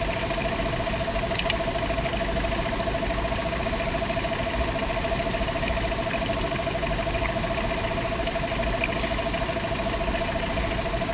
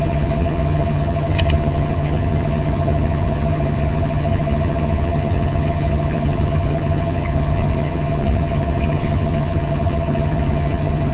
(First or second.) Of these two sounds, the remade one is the second